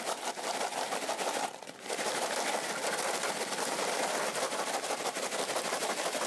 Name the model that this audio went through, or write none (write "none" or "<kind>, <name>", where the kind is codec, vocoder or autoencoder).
none